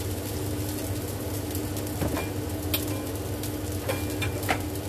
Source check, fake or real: real